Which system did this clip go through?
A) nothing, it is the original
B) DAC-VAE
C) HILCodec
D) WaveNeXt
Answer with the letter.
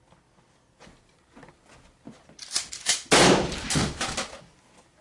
A